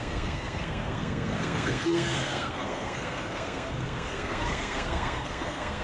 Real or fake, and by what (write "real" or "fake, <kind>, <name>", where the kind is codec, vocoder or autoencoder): fake, codec, SNAC